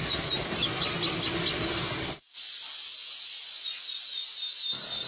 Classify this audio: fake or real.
real